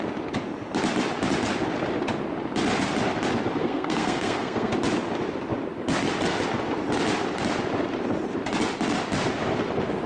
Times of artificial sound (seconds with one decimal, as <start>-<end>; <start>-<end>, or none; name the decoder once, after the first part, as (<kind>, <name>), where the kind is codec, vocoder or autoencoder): 3.6-4.7 (codec, SNAC)